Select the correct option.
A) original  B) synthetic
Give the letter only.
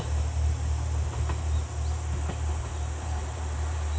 A